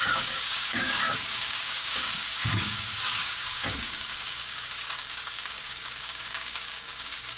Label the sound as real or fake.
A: fake